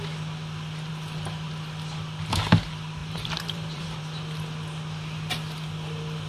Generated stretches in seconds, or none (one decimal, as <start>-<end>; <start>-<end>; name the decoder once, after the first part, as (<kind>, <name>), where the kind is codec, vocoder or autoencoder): 3.0-4.0 (vocoder, BigVGAN v2)